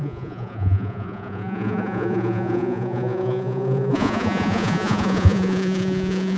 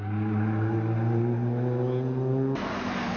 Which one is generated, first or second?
first